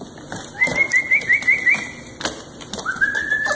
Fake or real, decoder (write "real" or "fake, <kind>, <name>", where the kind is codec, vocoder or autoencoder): real